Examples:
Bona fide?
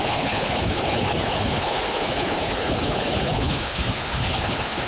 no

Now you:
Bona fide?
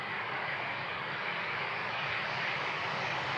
no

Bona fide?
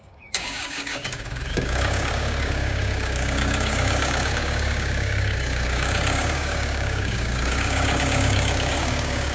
no